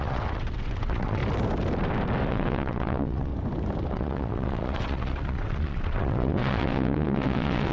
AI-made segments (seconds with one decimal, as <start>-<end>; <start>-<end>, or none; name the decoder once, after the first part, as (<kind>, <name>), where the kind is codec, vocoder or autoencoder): 0.0-1.2 (vocoder, WaveNeXt); 2.3-3.3; 3.9-7.7